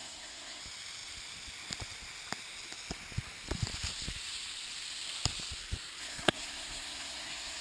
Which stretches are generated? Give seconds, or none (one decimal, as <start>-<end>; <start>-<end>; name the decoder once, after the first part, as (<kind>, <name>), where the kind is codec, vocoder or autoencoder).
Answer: 0.0-0.6 (codec, SNAC); 6.0-7.6